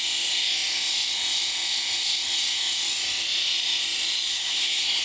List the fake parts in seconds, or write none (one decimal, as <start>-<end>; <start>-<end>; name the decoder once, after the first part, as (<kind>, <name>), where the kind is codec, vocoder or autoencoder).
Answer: 4.3-5.0 (codec, SNAC)